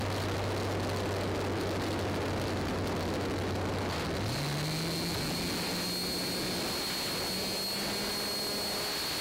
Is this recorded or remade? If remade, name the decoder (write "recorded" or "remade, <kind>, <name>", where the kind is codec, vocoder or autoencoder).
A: recorded